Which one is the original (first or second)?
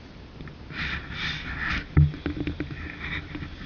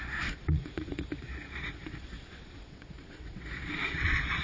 first